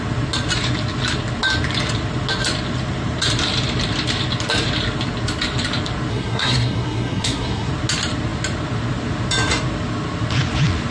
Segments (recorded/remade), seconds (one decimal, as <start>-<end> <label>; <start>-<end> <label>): 0.0-6.1 recorded; 6.1-7.7 remade; 7.7-10.9 recorded